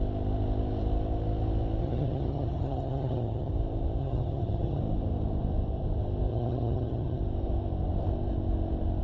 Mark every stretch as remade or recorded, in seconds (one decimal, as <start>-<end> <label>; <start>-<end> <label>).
0.0-1.8 recorded; 1.8-3.5 remade; 3.5-4.0 recorded; 4.0-4.8 remade; 4.8-6.3 recorded; 6.3-7.2 remade; 7.2-9.0 recorded